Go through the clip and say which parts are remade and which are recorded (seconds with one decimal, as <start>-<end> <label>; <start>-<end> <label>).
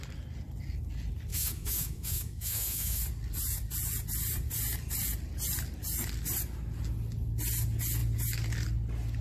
0.0-1.3 recorded; 1.3-3.0 remade; 3.0-9.2 recorded